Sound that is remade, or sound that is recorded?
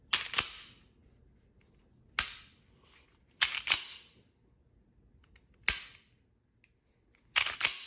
recorded